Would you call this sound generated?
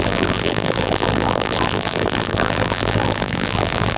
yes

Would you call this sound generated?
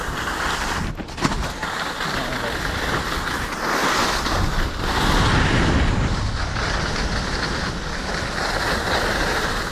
no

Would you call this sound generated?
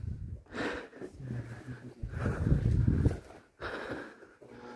no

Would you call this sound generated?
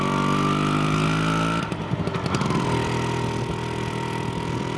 yes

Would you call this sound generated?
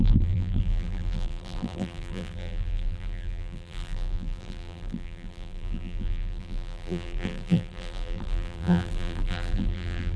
yes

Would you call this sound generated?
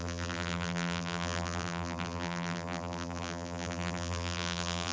yes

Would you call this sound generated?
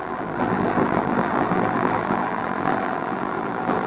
yes